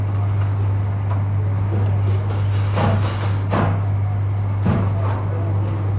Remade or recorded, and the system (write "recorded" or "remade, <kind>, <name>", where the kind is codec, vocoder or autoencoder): recorded